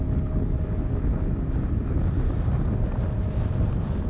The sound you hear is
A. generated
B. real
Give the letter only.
B